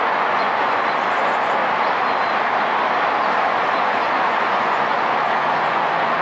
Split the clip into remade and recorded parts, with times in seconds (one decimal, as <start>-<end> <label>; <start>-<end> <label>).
0.0-1.6 remade; 1.6-3.4 recorded; 3.4-6.2 remade